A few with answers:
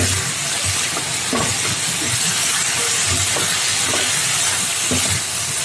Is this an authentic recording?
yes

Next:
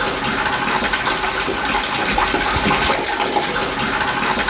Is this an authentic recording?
yes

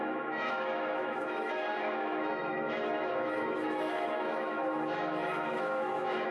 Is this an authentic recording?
no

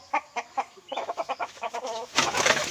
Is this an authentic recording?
no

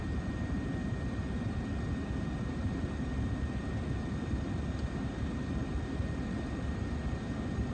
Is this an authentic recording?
no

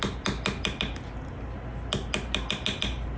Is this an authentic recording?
yes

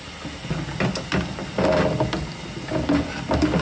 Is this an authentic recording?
yes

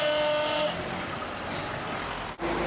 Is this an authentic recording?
yes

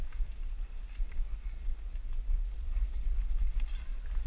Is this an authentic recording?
yes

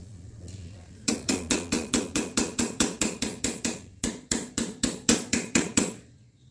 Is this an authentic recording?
no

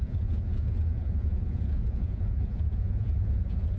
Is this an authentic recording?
no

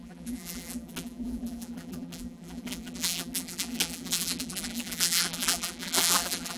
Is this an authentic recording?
no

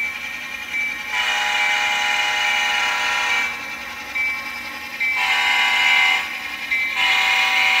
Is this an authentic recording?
yes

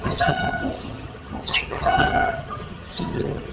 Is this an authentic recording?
no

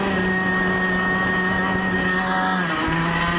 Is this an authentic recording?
yes